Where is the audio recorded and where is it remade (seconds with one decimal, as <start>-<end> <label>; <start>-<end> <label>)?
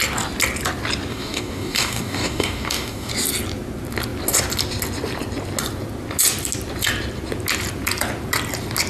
0.0-1.1 recorded; 1.1-3.1 remade; 3.1-8.9 recorded